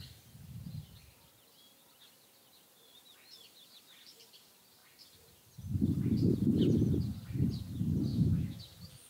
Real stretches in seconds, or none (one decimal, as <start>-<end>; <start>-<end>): 0.0-8.1; 8.6-9.1